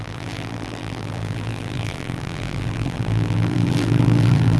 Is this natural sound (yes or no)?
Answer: no